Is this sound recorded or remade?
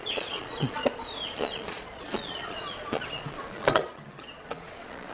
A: remade